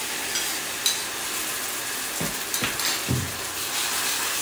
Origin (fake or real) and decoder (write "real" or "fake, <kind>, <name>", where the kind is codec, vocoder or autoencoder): real